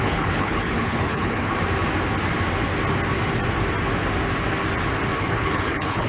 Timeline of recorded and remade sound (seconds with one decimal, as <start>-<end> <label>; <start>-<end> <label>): 0.0-1.5 remade; 1.5-5.2 recorded; 5.2-6.1 remade